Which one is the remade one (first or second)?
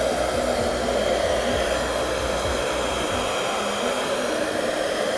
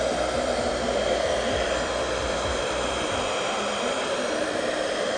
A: second